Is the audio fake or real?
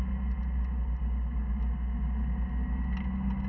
real